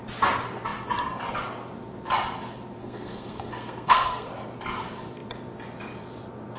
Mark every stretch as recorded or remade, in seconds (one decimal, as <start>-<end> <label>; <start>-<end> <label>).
0.0-2.8 recorded; 2.8-4.3 remade; 4.3-6.6 recorded